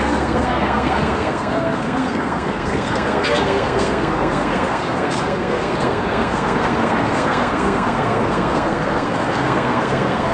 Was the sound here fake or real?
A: fake